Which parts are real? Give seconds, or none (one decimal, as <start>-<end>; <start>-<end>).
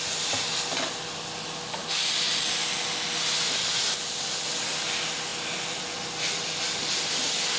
0.0-7.6